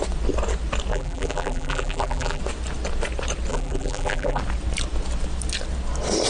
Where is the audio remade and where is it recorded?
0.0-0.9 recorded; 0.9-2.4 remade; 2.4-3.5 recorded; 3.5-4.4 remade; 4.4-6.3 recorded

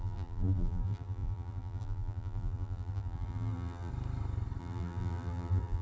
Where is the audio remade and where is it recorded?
0.0-3.9 remade; 3.9-4.6 recorded; 4.6-5.8 remade

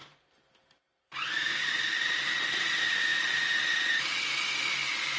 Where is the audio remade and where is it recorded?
0.0-1.7 remade; 1.7-3.1 recorded; 3.1-4.0 remade; 4.0-5.2 recorded

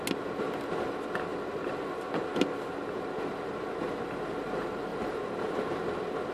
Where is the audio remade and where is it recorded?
0.0-4.9 recorded; 4.9-5.6 remade; 5.6-6.3 recorded

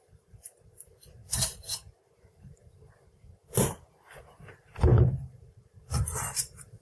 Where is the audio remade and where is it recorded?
0.0-6.8 remade

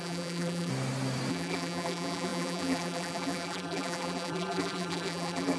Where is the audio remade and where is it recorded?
0.0-0.7 remade; 0.7-1.3 recorded; 1.3-5.6 remade